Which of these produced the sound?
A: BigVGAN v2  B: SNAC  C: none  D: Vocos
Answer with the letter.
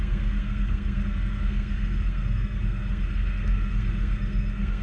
B